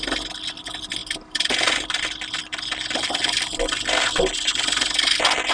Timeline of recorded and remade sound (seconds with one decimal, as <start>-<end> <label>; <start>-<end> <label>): 0.0-5.5 recorded